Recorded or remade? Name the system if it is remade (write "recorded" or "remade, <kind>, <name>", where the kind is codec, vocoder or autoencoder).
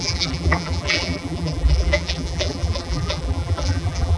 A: remade, vocoder, BigVGAN v2